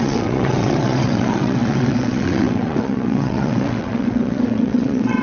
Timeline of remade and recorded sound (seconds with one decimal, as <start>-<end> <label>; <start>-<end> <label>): 0.0-5.2 remade